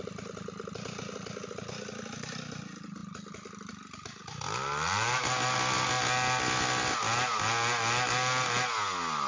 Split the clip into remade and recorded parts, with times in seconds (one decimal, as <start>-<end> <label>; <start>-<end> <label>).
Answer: 0.0-9.3 recorded